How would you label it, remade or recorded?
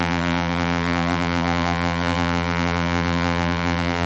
remade